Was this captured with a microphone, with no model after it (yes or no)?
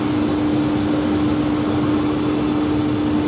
yes